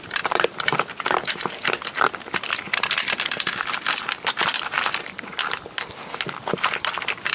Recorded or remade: recorded